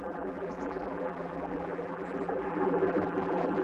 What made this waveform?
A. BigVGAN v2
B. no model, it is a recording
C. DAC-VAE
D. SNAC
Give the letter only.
A